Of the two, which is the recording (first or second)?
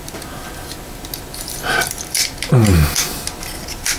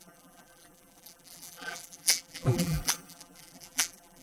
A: first